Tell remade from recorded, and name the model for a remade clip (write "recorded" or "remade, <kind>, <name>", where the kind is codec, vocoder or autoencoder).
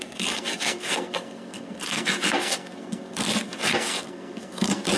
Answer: remade, codec, SNAC